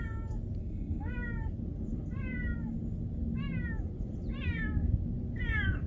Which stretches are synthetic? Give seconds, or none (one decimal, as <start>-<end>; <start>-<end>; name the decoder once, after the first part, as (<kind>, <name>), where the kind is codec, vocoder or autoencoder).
0.6-1.1 (codec, SNAC)